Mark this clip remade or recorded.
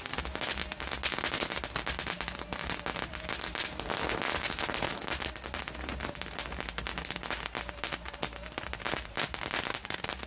recorded